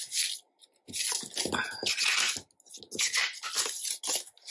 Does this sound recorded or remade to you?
recorded